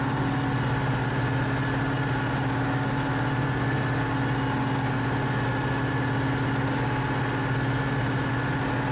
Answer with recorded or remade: recorded